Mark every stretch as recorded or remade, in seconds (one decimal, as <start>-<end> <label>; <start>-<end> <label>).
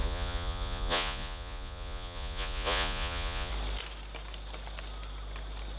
0.0-3.5 remade; 3.5-5.8 recorded